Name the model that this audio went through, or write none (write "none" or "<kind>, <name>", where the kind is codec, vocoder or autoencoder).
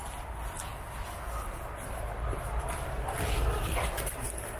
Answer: none